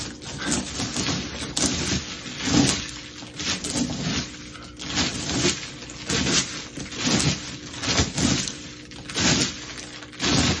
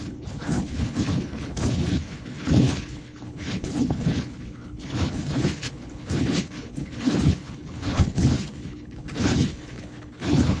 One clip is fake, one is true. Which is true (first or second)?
first